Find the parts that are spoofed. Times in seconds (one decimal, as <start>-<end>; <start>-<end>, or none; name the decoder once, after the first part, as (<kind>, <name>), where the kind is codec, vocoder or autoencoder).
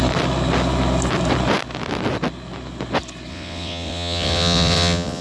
3.3-5.2 (vocoder, WaveNeXt)